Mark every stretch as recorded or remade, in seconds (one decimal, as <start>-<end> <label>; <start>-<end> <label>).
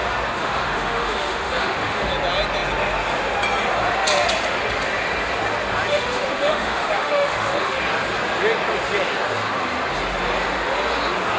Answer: 0.0-0.4 recorded; 0.4-2.1 remade; 2.1-5.9 recorded; 5.9-7.8 remade; 7.8-11.4 recorded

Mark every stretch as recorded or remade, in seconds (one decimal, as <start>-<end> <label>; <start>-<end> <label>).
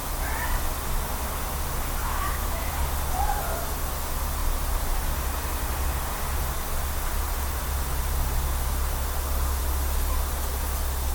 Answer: 0.0-2.0 recorded; 2.0-2.7 remade; 2.7-11.1 recorded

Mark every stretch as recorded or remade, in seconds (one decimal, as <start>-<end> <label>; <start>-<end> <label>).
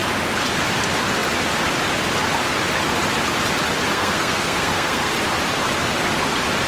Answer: 0.0-3.9 recorded; 3.9-5.1 remade; 5.1-6.7 recorded